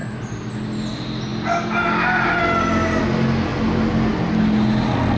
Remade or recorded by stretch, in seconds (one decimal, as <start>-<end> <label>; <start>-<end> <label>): 0.0-5.2 recorded